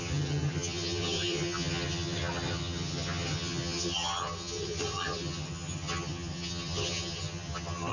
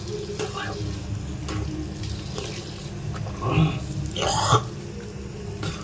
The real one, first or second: second